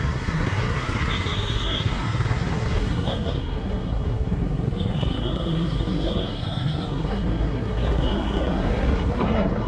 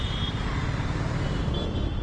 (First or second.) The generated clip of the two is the first